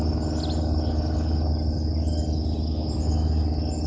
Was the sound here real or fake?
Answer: real